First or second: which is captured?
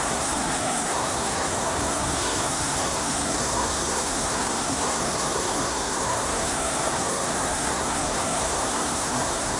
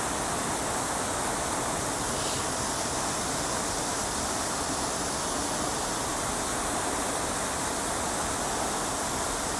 second